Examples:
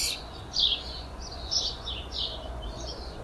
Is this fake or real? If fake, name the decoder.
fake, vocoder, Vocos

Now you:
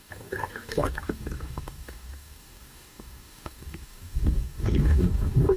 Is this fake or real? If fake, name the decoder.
fake, codec, DAC